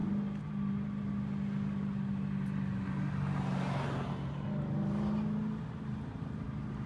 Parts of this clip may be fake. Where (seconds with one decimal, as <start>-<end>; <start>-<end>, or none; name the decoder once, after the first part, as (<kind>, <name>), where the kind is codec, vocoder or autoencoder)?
none